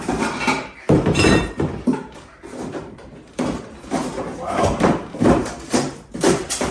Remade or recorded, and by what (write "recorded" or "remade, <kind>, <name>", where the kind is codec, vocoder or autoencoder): remade, vocoder, BigVGAN v2